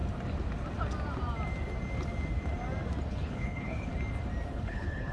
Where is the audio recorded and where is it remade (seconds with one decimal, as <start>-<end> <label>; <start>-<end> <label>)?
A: 0.0-3.1 recorded; 3.1-3.9 remade; 3.9-4.5 recorded; 4.5-5.1 remade